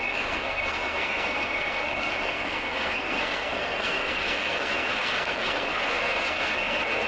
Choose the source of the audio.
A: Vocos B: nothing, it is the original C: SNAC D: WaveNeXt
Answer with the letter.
C